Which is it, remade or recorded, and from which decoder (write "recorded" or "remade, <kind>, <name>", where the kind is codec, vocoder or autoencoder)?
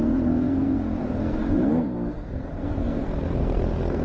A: remade, codec, SNAC